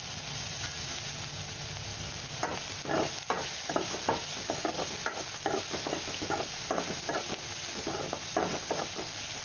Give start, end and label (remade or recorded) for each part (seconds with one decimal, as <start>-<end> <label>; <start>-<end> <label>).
0.0-9.4 recorded